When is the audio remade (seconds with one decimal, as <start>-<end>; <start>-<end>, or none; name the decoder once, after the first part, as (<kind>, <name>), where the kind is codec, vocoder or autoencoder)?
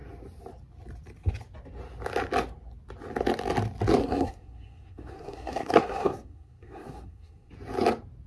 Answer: 4.0-7.5 (codec, SNAC)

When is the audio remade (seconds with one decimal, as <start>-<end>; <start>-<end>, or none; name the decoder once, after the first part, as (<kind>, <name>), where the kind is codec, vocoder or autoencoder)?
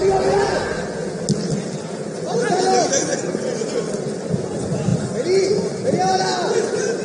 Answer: none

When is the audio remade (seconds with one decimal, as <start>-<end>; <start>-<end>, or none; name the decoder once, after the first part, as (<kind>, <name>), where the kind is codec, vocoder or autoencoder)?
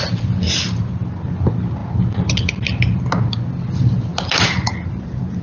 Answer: none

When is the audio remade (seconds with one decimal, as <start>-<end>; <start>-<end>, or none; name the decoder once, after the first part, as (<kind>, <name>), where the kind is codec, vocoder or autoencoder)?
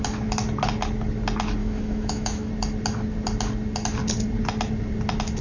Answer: 1.6-2.5 (autoencoder, DAC-VAE)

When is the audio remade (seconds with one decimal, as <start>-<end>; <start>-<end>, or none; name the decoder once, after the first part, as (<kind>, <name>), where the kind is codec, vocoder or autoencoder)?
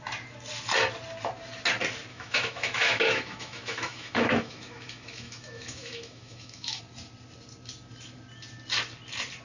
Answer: 2.1-6.8 (autoencoder, DAC-VAE)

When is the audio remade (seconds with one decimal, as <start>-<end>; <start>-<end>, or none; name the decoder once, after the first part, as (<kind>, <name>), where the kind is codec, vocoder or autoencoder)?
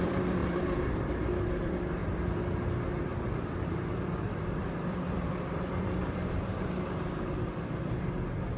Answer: 0.0-2.0 (vocoder, BigVGAN v2); 3.3-8.6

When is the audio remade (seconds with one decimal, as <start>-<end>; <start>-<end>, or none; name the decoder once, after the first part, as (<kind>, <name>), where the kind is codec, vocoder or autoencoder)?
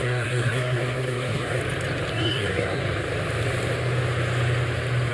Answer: 0.0-1.6 (codec, SNAC); 2.1-2.8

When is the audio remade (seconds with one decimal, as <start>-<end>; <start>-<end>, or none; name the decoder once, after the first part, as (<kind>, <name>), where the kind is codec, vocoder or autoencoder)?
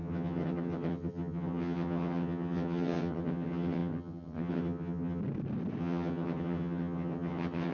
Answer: 0.0-5.2 (vocoder, HiFi-GAN); 5.8-7.7